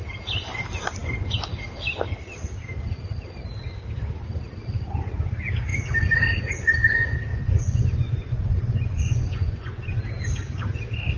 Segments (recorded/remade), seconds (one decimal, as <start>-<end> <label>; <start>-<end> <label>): 0.0-7.3 recorded; 7.3-10.0 remade; 10.0-11.2 recorded